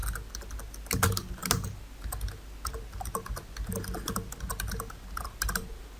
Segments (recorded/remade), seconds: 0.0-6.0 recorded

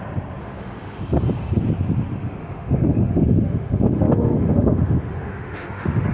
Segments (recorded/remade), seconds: 0.0-0.4 recorded; 0.4-1.0 remade; 1.0-2.4 recorded; 2.4-6.1 remade

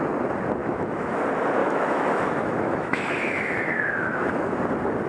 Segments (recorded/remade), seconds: 0.0-0.6 recorded; 0.6-1.2 remade; 1.2-1.6 recorded; 1.6-4.6 remade; 4.6-5.1 recorded

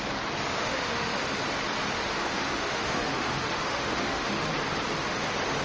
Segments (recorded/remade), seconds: 0.0-0.5 recorded; 0.5-1.4 remade; 1.4-2.2 recorded; 2.2-4.5 remade; 4.5-5.6 recorded

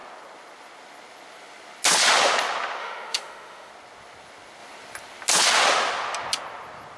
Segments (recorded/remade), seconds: 0.0-2.8 recorded; 2.8-3.7 remade; 3.7-7.0 recorded

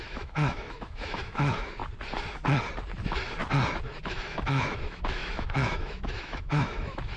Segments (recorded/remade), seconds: 0.0-1.8 remade; 1.8-4.0 recorded; 4.0-7.2 remade